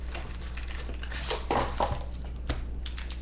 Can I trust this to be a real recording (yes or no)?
yes